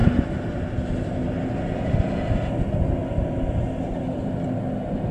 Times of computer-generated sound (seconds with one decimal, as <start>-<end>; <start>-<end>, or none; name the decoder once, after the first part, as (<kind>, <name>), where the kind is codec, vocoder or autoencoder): none

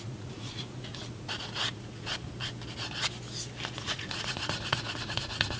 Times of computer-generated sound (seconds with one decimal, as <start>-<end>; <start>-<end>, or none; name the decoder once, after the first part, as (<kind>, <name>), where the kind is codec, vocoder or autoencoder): 0.0-2.1 (vocoder, Vocos); 3.7-5.6

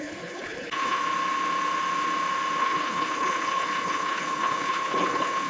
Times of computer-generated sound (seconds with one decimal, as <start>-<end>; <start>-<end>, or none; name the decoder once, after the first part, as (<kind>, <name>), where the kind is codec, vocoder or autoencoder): 0.0-1.0 (codec, HILCodec); 2.6-5.5